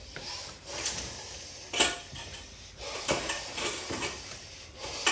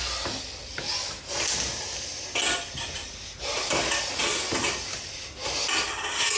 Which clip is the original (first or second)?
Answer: second